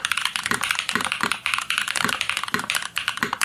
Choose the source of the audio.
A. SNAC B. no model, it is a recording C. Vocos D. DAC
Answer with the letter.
B